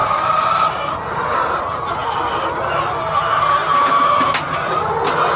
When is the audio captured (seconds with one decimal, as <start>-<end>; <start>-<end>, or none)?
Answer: 0.0-5.4